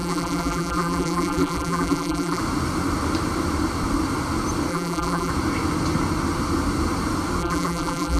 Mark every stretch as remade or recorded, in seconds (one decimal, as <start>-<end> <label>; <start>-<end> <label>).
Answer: 0.0-2.4 remade; 2.4-4.7 recorded; 4.7-5.3 remade; 5.3-7.4 recorded; 7.4-8.2 remade